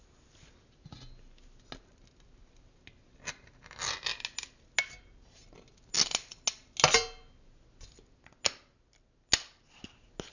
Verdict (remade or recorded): recorded